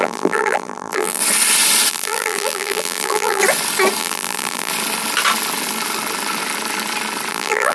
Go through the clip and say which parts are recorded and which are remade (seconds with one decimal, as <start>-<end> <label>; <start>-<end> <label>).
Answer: 0.0-1.2 remade; 1.2-1.9 recorded; 1.9-3.4 remade; 3.4-4.0 recorded; 4.0-4.7 remade; 4.7-7.3 recorded; 7.3-7.7 remade